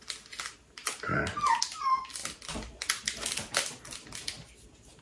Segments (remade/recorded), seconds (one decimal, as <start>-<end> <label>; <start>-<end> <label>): 0.0-5.0 recorded